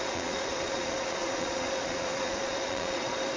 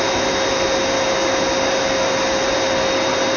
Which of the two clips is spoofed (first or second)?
first